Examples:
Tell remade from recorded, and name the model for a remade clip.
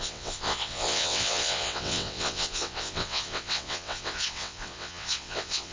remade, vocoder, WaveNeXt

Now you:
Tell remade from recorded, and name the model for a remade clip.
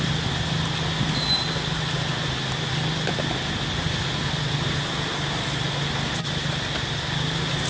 recorded